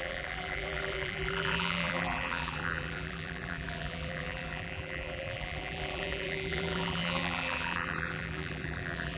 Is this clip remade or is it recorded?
remade